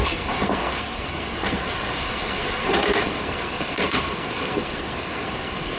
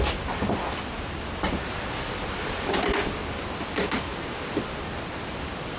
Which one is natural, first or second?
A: second